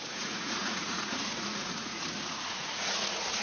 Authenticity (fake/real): fake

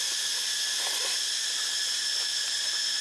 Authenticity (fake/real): real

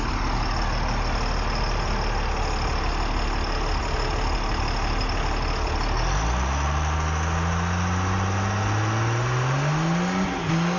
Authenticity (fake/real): real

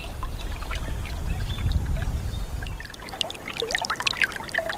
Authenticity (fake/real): real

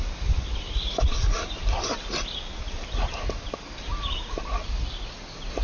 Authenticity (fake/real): real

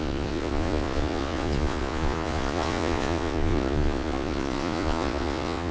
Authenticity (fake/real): fake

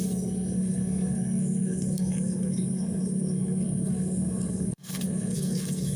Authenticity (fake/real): fake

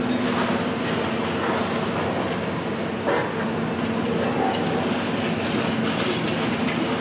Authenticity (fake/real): real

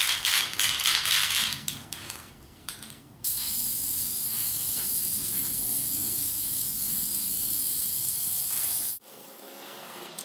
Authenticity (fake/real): fake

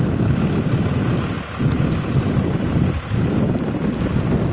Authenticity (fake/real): real